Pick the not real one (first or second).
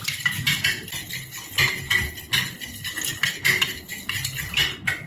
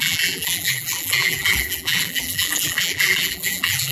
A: second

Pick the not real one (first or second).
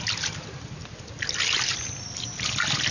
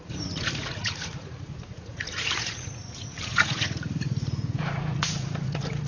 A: second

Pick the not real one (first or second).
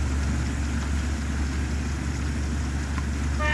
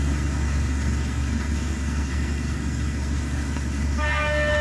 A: second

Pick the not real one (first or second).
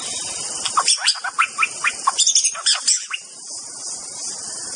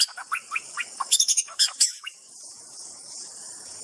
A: second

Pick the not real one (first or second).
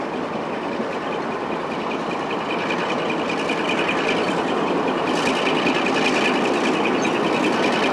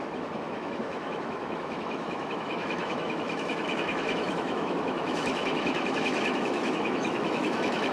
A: second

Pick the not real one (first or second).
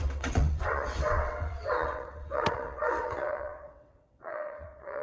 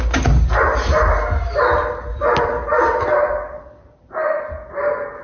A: first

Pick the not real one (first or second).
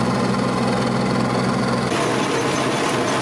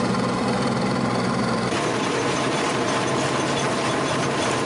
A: second